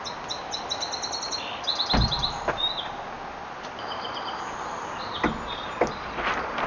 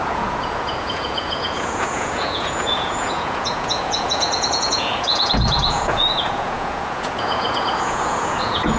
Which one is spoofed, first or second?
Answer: second